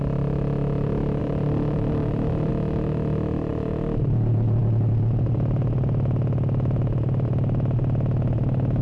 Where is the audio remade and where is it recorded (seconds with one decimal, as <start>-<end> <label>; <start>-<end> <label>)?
0.0-1.2 recorded; 1.2-2.5 remade; 2.5-3.5 recorded; 3.5-4.0 remade; 4.0-8.8 recorded